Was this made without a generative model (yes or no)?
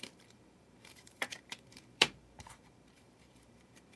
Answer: no